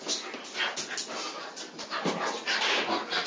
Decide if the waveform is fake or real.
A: real